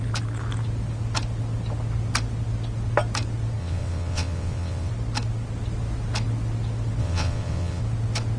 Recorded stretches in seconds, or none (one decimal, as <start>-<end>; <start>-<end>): 0.0-3.6; 4.9-7.0; 7.8-8.4